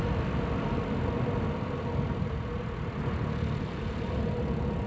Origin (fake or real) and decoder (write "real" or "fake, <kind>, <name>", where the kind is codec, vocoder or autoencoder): real